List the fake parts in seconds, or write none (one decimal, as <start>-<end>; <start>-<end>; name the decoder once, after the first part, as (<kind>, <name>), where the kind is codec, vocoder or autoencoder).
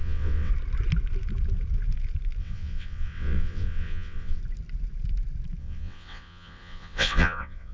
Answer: 0.0-0.5 (vocoder, WaveNeXt); 2.4-4.4; 5.6-7.7